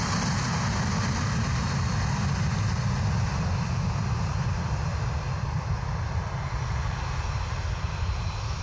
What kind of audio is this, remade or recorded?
recorded